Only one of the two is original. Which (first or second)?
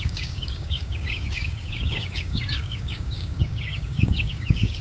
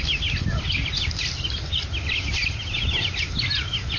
second